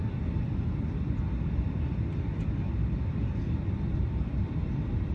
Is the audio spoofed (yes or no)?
no